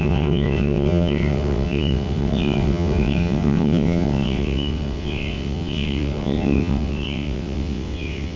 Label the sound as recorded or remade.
remade